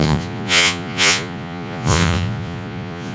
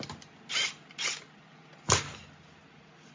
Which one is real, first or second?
second